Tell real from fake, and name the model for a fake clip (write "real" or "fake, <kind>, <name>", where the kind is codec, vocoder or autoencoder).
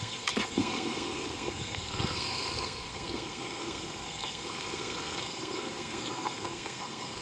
fake, codec, SNAC